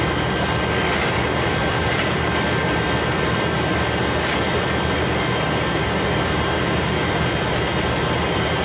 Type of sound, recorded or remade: remade